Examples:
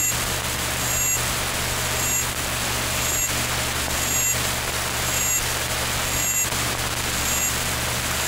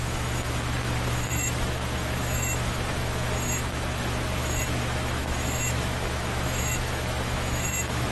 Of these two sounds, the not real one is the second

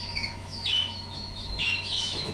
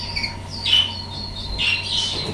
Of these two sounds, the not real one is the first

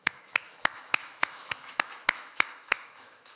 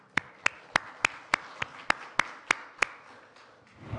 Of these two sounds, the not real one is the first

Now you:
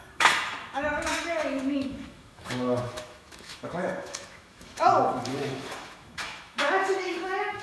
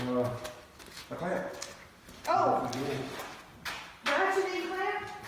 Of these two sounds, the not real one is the first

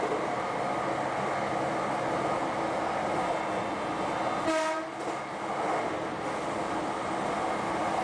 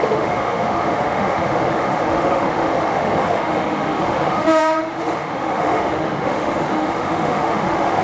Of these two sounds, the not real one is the second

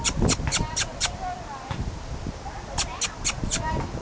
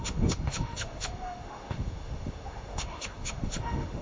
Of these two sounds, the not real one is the second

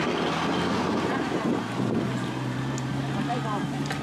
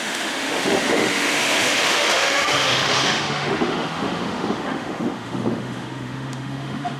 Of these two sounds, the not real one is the second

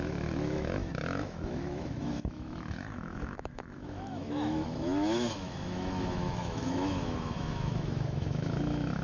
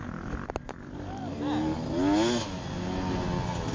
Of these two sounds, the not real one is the first